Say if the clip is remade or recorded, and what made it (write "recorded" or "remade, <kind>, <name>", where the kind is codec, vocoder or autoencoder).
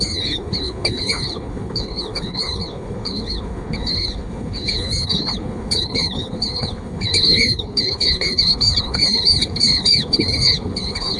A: remade, codec, HILCodec